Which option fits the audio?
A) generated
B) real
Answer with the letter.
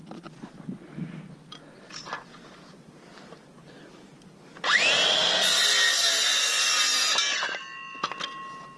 B